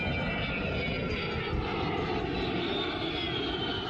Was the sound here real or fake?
real